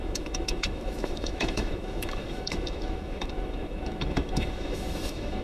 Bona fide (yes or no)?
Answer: no